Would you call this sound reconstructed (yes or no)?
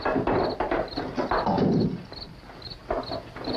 no